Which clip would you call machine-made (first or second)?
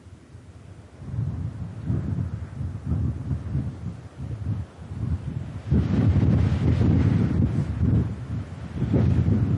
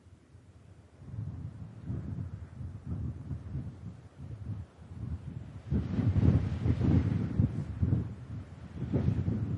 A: second